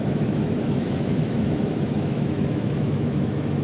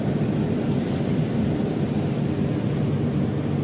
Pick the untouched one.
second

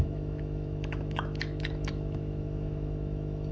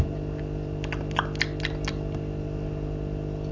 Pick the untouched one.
second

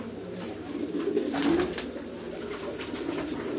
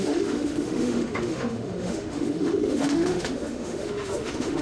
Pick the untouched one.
first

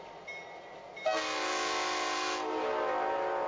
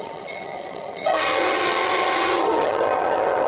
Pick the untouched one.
first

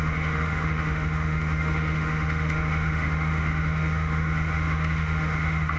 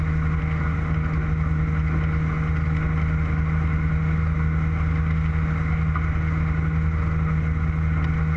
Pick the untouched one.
second